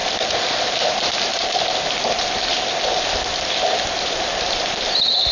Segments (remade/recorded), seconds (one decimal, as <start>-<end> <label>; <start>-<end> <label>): 0.0-5.3 recorded